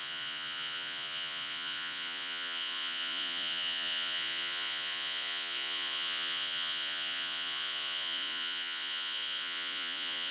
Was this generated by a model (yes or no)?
yes